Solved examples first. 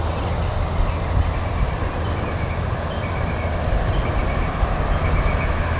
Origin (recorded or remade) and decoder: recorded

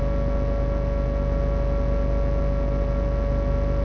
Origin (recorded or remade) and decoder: recorded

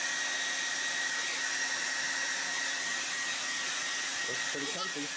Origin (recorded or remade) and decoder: remade, vocoder, BigVGAN v2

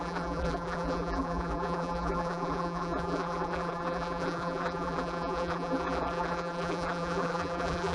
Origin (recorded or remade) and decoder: remade, vocoder, BigVGAN v2